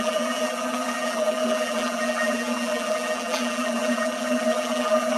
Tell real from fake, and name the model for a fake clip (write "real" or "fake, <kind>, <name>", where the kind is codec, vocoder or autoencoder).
fake, vocoder, BigVGAN v2